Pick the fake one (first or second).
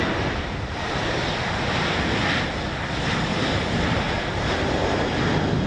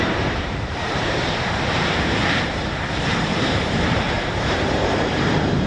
second